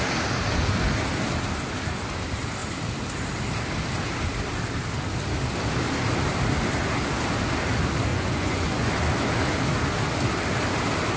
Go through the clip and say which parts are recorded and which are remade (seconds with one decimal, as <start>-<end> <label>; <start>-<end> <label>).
0.0-8.1 recorded; 8.1-8.9 remade; 8.9-11.2 recorded